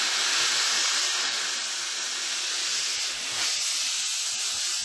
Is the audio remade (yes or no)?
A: no